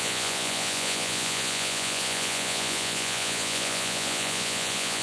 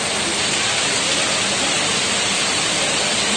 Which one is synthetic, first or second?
first